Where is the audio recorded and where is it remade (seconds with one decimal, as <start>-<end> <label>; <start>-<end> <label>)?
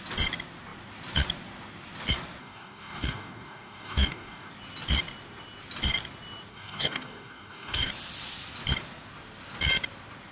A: 0.0-2.4 recorded; 2.4-4.5 remade; 4.5-6.5 recorded; 6.5-7.9 remade; 7.9-10.3 recorded